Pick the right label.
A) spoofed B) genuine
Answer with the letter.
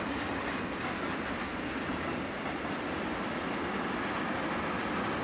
B